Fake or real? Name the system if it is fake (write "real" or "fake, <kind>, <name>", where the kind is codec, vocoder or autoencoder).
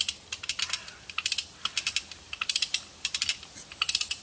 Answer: real